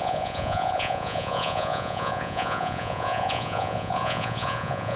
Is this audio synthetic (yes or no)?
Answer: yes